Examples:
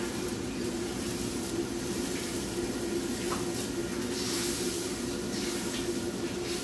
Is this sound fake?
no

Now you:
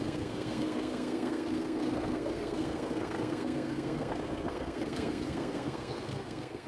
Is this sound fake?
yes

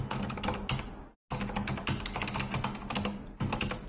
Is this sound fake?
no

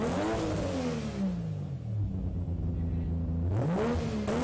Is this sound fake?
no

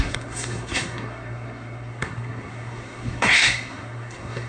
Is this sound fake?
yes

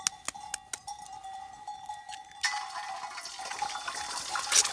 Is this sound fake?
no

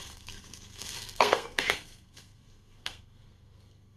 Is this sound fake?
yes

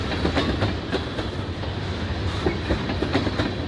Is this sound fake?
no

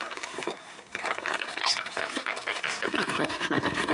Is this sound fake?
yes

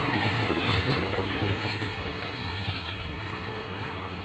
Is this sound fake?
yes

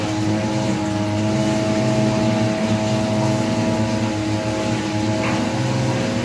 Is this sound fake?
no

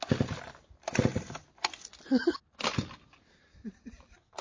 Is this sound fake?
no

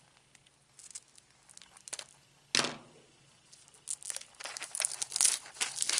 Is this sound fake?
no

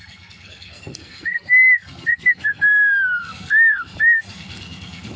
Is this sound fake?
yes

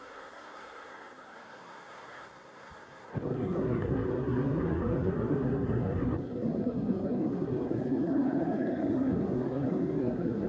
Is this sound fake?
yes